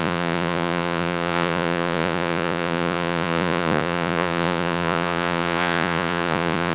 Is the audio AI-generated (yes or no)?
yes